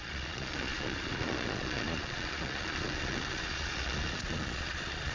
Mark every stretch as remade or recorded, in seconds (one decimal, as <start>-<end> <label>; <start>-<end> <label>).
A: 0.0-5.1 remade